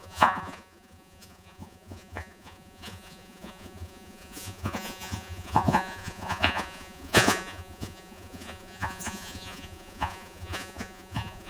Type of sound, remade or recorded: remade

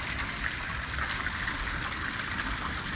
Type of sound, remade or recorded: recorded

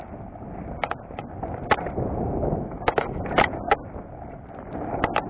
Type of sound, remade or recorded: recorded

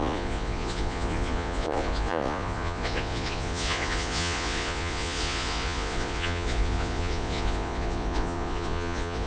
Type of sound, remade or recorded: remade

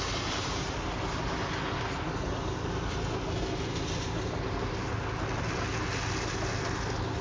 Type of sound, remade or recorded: recorded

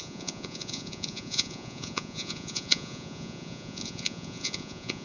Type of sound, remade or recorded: remade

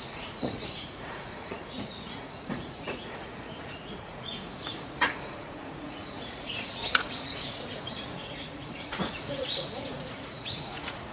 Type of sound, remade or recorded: remade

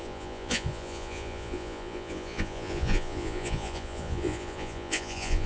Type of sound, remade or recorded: remade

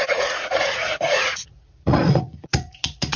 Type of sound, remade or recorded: remade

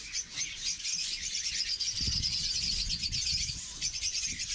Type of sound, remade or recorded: remade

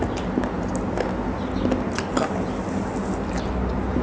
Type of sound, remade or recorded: recorded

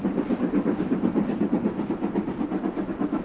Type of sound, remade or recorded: recorded